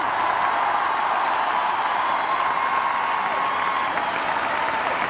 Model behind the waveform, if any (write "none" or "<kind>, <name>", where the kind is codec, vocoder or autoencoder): none